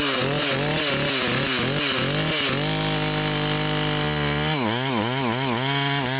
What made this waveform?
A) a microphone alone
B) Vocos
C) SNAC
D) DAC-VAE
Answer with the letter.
A